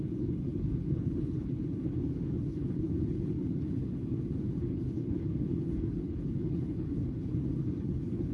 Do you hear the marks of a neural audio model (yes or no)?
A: yes